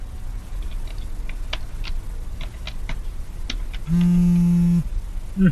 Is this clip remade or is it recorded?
recorded